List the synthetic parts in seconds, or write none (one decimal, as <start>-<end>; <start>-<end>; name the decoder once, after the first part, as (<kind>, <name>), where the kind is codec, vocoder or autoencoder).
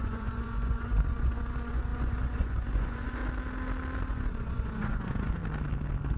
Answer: 0.0-3.2 (vocoder, Vocos); 4.1-5.4